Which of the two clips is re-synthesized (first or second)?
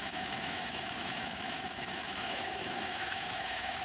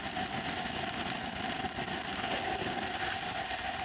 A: first